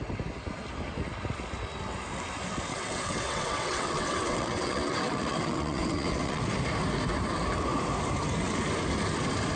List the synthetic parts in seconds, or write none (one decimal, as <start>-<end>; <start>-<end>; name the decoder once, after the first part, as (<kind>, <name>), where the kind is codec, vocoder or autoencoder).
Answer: 2.7-6.4 (vocoder, WaveNeXt)